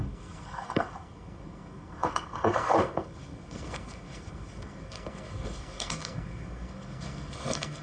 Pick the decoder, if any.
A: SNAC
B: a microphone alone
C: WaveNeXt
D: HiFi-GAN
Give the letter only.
A